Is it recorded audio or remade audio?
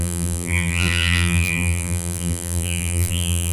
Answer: remade